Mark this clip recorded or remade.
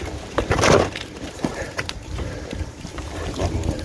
remade